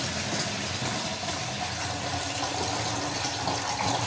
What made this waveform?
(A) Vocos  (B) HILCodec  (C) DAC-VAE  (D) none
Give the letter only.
D